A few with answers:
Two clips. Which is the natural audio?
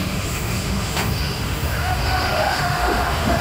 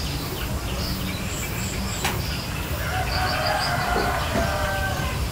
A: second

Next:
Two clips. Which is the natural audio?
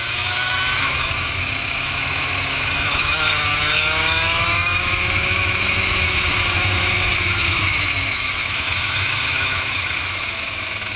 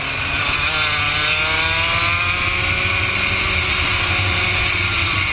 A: second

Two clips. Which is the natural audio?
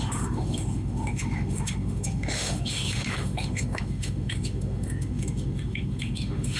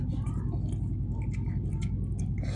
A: second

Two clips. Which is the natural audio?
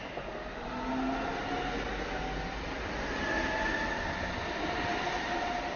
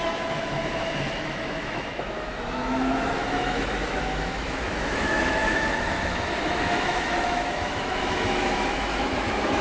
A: first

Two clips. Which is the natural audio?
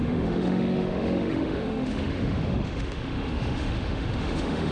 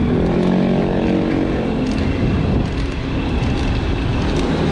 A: second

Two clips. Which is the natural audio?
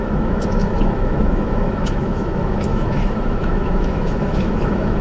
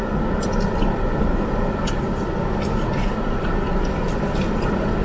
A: second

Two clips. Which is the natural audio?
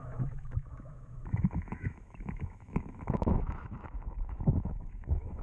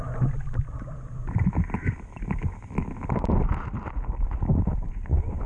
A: second